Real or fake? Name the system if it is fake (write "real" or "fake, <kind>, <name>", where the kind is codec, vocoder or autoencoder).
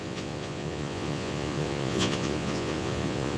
fake, vocoder, Vocos